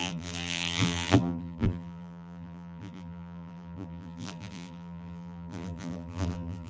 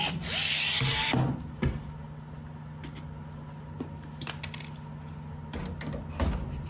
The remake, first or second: first